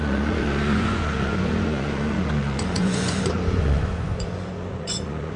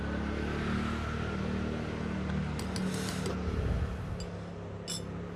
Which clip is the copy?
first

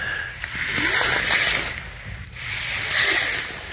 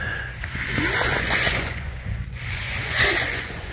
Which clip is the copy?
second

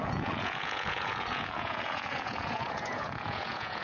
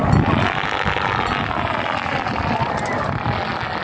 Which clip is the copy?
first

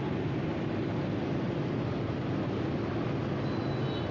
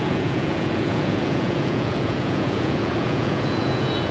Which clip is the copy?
second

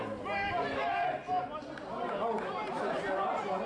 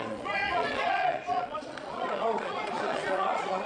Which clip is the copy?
second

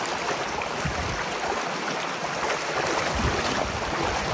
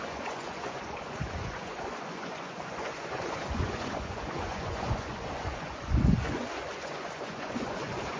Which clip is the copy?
second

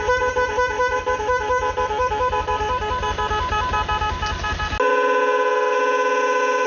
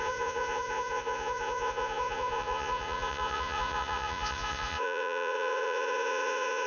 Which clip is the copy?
second